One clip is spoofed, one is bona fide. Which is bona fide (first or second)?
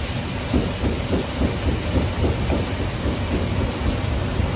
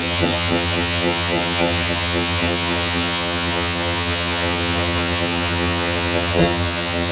first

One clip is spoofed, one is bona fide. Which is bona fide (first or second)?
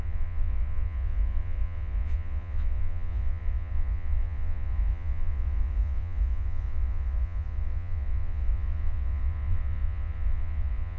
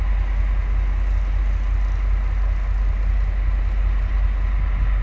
second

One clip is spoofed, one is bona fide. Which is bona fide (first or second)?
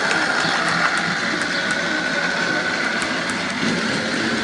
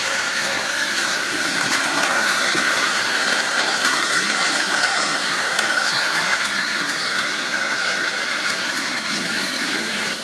first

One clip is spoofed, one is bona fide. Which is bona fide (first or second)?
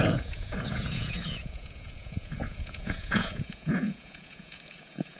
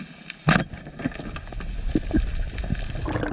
second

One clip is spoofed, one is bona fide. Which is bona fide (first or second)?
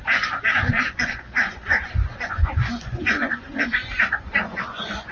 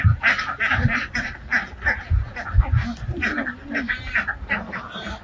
second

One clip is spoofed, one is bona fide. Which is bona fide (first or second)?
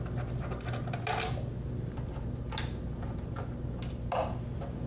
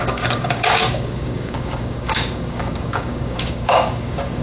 first